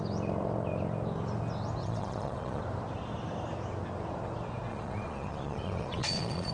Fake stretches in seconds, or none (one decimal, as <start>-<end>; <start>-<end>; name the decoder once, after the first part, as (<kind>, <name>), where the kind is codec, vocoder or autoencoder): 1.8-2.6 (vocoder, Vocos); 4.7-6.5